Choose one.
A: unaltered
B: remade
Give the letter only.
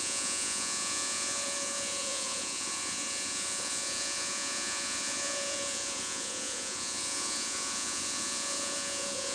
B